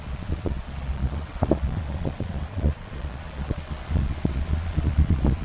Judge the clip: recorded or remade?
remade